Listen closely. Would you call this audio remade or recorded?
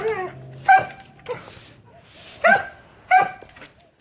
recorded